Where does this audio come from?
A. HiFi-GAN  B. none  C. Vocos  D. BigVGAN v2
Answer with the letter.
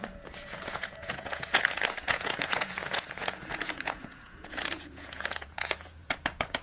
C